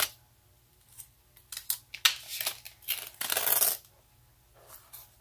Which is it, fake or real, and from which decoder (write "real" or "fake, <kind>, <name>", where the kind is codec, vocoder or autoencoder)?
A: real